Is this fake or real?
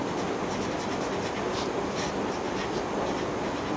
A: real